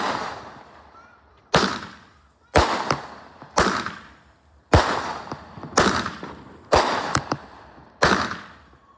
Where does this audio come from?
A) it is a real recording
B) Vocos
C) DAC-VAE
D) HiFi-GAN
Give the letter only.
A